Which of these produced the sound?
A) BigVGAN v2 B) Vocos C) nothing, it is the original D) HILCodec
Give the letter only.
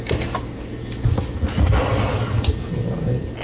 C